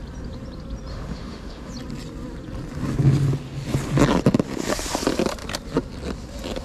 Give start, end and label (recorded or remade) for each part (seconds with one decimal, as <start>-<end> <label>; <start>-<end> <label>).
0.0-0.9 recorded; 0.9-1.7 remade; 1.7-6.6 recorded